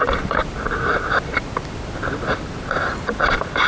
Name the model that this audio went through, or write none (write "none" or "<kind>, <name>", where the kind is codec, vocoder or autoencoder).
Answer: none